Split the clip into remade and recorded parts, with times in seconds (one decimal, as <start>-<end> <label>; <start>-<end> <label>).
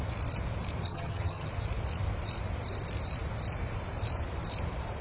0.0-0.9 recorded; 0.9-1.5 remade; 1.5-5.0 recorded